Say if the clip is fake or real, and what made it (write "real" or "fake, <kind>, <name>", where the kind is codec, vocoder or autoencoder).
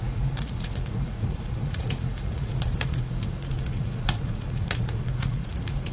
fake, vocoder, Vocos